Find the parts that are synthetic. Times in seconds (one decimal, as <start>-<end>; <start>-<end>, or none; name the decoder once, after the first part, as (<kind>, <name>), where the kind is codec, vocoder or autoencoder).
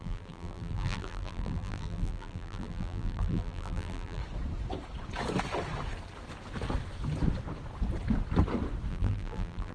0.0-4.2 (vocoder, BigVGAN v2); 8.9-9.7